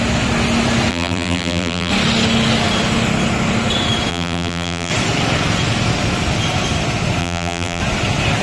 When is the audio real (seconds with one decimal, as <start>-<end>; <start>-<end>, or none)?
0.0-0.9; 1.9-4.1; 4.9-7.2; 7.8-8.4